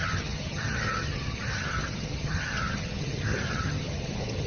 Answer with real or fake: fake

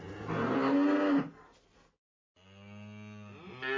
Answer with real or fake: real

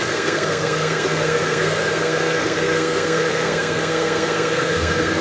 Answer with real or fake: fake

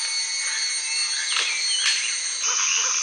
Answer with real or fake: real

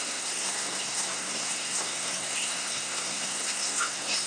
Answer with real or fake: fake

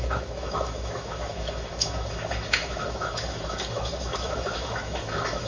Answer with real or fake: fake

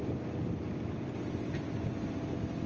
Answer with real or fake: real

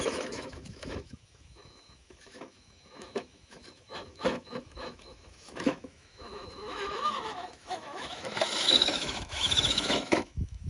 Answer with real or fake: fake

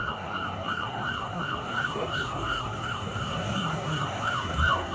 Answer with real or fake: fake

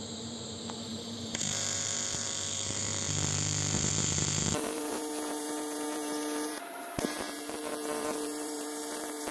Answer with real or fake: fake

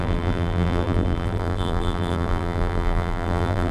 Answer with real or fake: fake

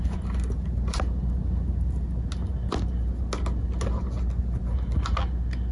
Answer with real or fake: real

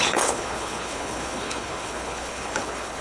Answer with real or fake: fake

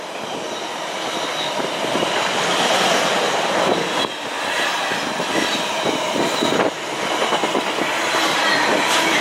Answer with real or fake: real